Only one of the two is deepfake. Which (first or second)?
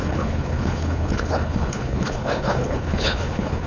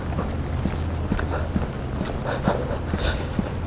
first